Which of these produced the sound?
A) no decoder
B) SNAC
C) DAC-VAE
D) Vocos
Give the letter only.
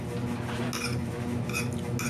A